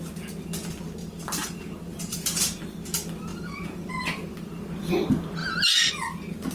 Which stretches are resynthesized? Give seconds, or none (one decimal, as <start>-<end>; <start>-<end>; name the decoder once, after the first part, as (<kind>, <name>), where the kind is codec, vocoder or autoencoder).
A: 1.0-2.6 (vocoder, BigVGAN v2); 3.3-3.9; 5.4-5.9